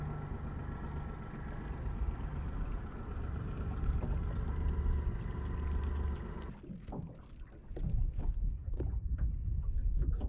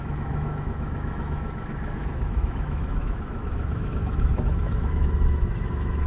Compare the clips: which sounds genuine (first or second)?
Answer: first